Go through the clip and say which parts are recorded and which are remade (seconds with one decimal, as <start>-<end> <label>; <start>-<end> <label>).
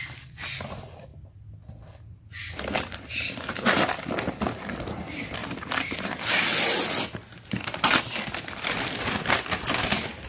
0.0-10.3 recorded